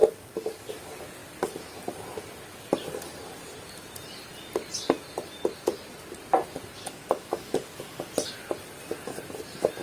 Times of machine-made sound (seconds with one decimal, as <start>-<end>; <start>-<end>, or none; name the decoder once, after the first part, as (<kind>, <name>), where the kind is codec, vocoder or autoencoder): 0.0-0.7 (codec, DAC); 6.8-8.1

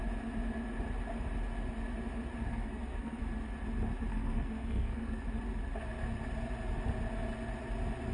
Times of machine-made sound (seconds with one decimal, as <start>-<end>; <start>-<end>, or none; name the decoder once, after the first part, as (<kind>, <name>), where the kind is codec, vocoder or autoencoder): 2.5-3.2 (codec, SNAC); 4.1-5.2

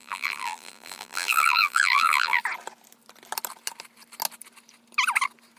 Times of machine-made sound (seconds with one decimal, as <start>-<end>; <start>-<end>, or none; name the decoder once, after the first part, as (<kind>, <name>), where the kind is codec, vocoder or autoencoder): 0.0-2.4 (vocoder, BigVGAN v2)

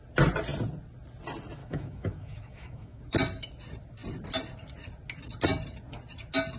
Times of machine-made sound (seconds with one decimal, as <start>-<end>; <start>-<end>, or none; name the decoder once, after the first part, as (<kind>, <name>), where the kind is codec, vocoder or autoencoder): 1.6-3.0 (autoencoder, DAC-VAE)

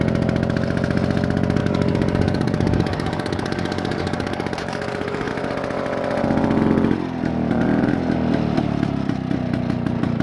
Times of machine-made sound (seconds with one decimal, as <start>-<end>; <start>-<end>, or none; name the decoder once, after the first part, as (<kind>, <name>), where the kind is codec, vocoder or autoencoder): 1.6-5.3 (codec, DAC)